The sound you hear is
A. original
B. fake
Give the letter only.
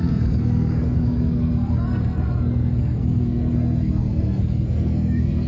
B